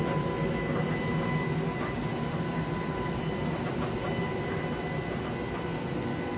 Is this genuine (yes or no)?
yes